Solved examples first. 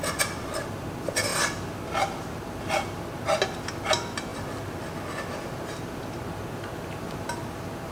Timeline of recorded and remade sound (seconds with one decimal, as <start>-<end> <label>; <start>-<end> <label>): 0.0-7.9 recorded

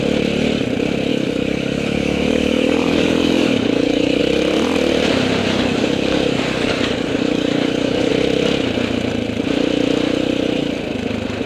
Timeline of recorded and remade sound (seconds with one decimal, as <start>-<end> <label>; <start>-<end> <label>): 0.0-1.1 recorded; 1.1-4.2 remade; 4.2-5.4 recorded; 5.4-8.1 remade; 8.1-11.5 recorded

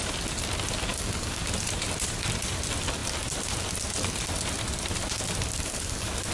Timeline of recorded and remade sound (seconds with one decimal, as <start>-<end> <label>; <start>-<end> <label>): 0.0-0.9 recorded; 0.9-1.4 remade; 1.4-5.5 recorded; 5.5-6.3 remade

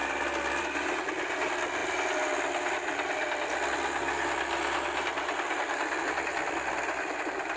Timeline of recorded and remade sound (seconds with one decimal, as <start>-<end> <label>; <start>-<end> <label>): 0.0-7.6 recorded

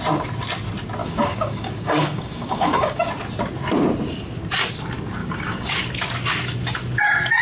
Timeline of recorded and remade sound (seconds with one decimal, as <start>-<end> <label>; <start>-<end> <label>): 0.0-1.0 recorded; 1.0-3.1 remade; 3.1-5.2 recorded; 5.2-5.7 remade; 5.7-7.4 recorded

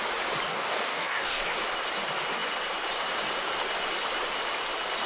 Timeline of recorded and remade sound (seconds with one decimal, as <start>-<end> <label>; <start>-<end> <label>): 0.0-0.5 recorded; 0.5-1.4 remade; 1.4-5.1 recorded

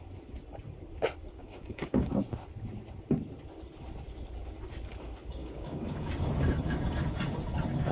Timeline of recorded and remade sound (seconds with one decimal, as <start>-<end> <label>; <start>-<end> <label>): 0.0-1.4 recorded; 1.4-2.1 remade; 2.1-5.4 recorded; 5.4-6.1 remade; 6.1-7.9 recorded

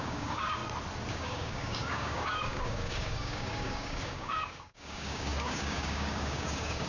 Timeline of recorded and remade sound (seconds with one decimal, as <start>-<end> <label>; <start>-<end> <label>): 0.0-0.6 remade; 0.6-1.1 recorded; 1.1-6.9 remade